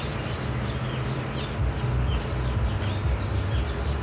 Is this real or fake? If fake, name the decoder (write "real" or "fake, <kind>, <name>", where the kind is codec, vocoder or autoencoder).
real